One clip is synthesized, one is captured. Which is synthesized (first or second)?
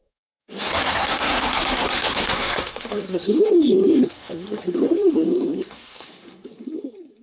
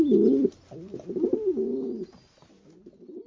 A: first